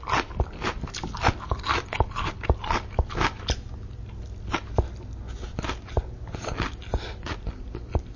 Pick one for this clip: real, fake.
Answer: real